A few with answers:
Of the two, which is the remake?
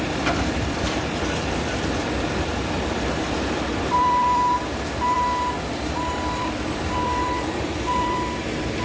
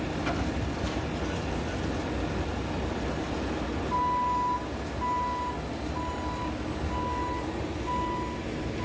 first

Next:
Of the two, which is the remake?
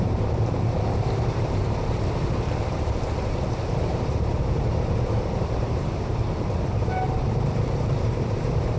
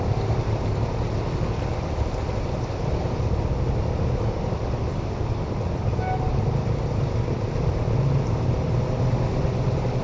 first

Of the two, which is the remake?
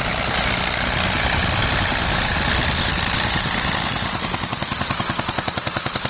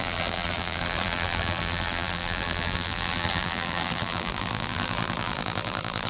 second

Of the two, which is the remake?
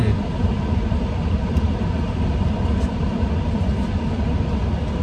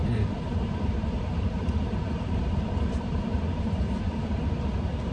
second